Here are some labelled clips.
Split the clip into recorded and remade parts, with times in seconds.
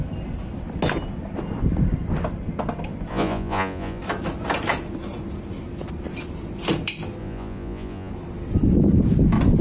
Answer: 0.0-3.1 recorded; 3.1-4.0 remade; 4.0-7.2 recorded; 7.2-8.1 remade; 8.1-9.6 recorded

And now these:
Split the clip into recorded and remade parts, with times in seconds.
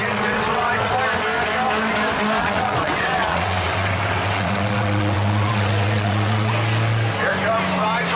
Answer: 0.0-0.9 remade; 0.9-2.4 recorded; 2.4-6.5 remade; 6.5-8.2 recorded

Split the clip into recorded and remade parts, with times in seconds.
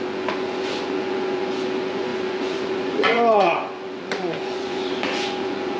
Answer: 0.0-5.8 remade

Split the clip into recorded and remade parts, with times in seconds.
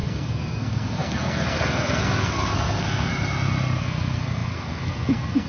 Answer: 0.0-3.1 remade; 3.1-3.8 recorded; 3.8-5.5 remade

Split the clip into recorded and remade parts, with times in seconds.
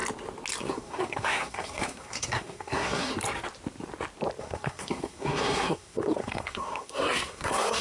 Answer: 0.0-0.6 recorded; 0.6-3.1 remade; 3.1-4.4 recorded; 4.4-7.8 remade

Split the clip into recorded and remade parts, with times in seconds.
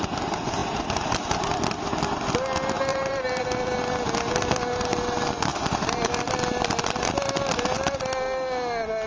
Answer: 0.0-0.6 recorded; 0.6-1.3 remade; 1.3-2.9 recorded; 2.9-3.4 remade; 3.4-5.5 recorded; 5.5-6.2 remade; 6.2-9.1 recorded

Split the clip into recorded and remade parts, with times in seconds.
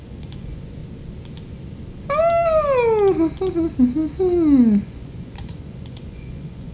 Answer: 0.0-0.8 remade; 0.8-4.8 recorded; 4.8-6.7 remade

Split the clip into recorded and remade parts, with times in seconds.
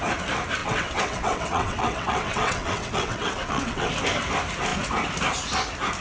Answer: 0.0-0.6 recorded; 0.6-3.9 remade; 3.9-6.0 recorded